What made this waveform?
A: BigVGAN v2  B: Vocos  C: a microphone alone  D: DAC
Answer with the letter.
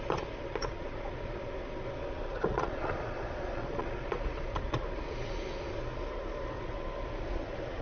B